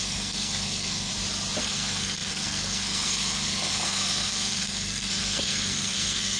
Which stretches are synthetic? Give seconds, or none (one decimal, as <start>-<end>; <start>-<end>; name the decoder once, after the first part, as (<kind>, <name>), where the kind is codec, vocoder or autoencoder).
0.0-1.1 (codec, SNAC); 1.6-6.4